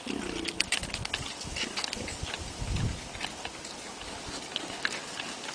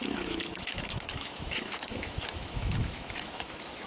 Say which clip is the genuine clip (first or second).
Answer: first